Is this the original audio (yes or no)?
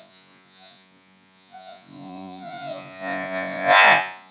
no